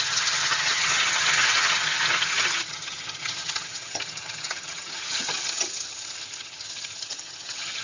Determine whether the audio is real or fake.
fake